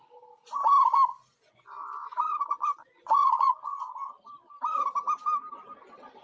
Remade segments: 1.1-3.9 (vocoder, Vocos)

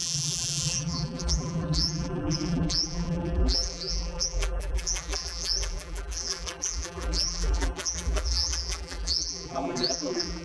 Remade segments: 0.0-10.4 (vocoder, BigVGAN v2)

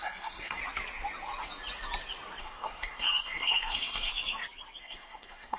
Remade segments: 0.0-0.6 (codec, SNAC); 2.4-4.1; 4.8-5.6

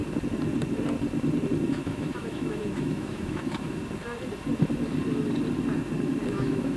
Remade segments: 1.7-3.8 (autoencoder, DAC-VAE); 6.3-6.8

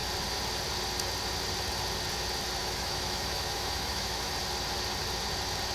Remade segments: 2.6-4.3 (autoencoder, DAC-VAE)

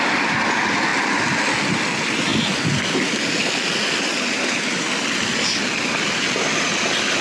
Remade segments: none